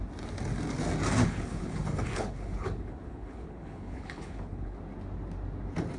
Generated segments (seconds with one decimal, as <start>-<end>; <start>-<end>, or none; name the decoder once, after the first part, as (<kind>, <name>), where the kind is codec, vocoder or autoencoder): 1.2-4.8 (codec, HILCodec)